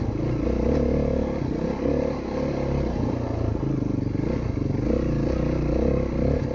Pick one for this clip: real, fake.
real